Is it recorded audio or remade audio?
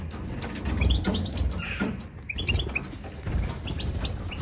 recorded